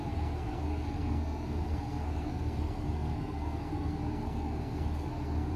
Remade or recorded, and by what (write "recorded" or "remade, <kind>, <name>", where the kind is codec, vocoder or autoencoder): remade, codec, SNAC